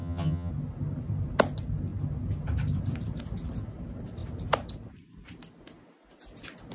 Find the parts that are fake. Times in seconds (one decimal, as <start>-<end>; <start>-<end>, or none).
0.0-0.5